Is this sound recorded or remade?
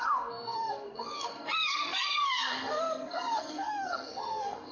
remade